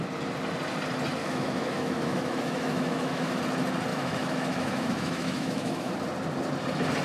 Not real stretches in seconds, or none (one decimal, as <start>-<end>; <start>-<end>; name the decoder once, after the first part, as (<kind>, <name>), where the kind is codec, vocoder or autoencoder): 1.2-3.4 (autoencoder, DAC-VAE); 3.9-5.9